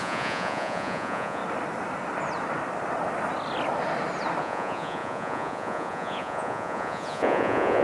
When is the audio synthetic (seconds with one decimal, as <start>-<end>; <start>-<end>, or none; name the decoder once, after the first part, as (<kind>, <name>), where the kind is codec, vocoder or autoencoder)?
0.0-1.4 (vocoder, Vocos); 4.4-7.8